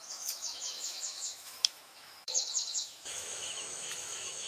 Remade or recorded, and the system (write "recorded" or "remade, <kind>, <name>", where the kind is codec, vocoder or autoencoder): remade, autoencoder, DAC-VAE